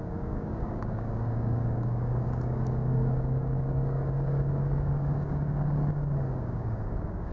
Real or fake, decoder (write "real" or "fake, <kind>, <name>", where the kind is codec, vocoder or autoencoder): fake, codec, DAC